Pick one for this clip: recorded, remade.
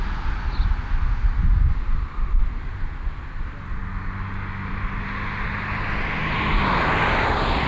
recorded